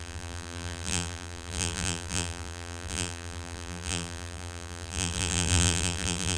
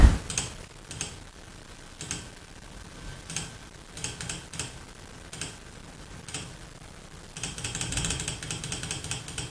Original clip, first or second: second